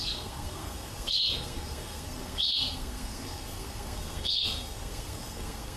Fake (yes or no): yes